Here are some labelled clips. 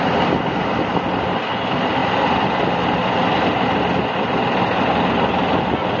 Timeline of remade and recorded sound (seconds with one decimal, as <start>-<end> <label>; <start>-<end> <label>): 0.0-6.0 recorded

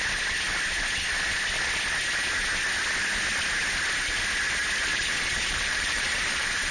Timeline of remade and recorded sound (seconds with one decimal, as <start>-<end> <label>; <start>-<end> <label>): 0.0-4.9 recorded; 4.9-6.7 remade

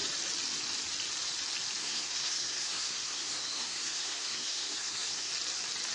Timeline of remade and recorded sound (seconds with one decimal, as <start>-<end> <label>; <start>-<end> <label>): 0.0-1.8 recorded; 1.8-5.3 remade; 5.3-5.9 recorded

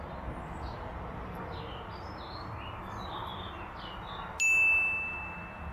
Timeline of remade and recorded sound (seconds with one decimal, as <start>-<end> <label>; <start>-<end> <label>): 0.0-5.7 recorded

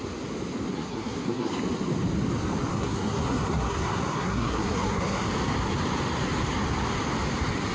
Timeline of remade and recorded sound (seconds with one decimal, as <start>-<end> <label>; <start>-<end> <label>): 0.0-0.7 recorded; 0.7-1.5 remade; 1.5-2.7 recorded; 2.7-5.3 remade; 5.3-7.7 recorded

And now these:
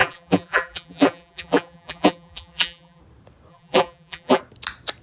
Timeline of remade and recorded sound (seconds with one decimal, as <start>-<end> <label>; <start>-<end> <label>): 0.0-3.0 remade; 3.0-3.5 recorded; 3.5-4.4 remade; 4.4-5.0 recorded

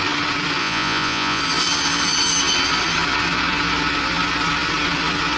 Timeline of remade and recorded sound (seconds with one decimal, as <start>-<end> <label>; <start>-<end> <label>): 0.0-0.6 recorded; 0.6-1.4 remade; 1.4-5.4 recorded